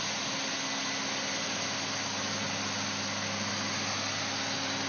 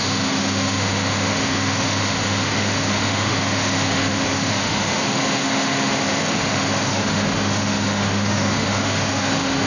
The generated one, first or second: second